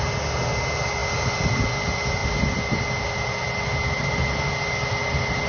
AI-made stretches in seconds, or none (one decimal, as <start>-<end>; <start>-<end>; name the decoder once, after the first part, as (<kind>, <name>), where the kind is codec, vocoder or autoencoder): none